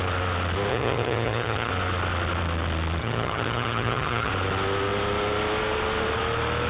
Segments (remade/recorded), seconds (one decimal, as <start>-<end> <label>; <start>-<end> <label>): 0.0-0.7 recorded; 0.7-1.7 remade; 1.7-3.0 recorded; 3.0-4.3 remade; 4.3-6.7 recorded